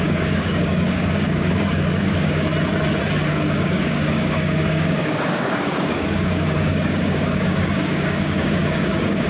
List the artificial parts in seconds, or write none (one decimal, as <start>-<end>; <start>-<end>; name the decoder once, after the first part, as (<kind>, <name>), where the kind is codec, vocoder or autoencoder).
0.0-2.5 (codec, DAC); 3.3-9.3